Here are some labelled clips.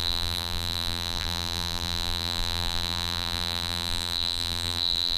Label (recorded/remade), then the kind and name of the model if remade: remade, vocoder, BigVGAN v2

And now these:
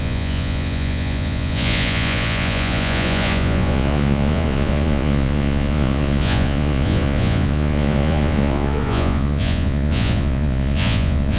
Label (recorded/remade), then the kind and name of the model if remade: remade, vocoder, Vocos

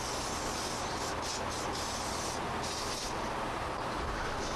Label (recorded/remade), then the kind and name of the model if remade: recorded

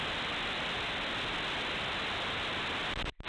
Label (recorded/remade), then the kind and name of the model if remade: recorded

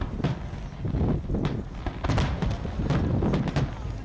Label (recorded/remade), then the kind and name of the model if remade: recorded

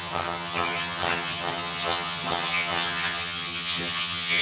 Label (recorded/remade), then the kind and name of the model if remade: remade, vocoder, HiFi-GAN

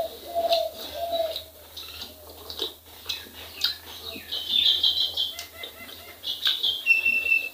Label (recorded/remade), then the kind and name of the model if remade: recorded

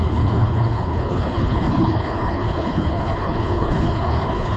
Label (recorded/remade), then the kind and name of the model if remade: remade, codec, HILCodec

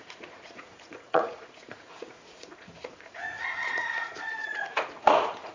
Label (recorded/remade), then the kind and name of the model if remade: remade, vocoder, Vocos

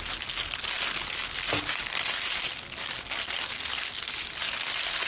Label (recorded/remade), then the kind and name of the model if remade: recorded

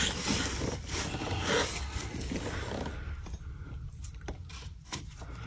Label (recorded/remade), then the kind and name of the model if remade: recorded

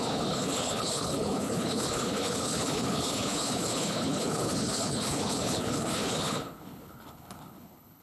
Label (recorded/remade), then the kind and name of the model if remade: remade, codec, HILCodec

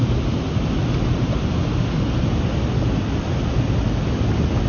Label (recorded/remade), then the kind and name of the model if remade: recorded